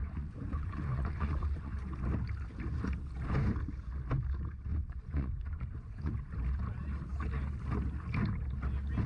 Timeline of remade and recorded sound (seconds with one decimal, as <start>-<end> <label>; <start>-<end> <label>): 0.0-1.8 remade; 1.8-4.7 recorded; 4.7-6.1 remade; 6.1-9.1 recorded